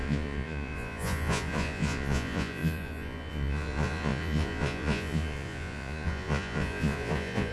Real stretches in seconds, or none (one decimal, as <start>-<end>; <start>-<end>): none